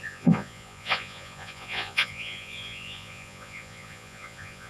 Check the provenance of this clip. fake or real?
fake